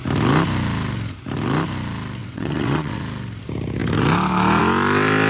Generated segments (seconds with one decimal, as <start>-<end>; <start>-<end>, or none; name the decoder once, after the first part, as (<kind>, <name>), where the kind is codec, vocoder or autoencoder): 2.2-3.0 (vocoder, WaveNeXt)